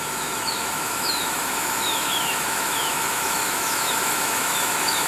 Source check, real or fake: fake